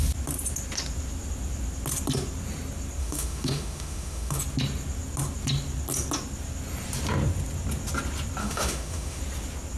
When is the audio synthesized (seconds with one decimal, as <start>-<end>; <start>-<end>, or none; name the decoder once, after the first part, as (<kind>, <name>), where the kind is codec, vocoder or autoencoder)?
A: 3.0-4.4 (autoencoder, DAC-VAE); 8.4-9.2